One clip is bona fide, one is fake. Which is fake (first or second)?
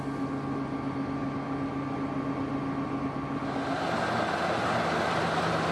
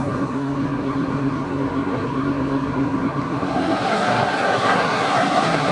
second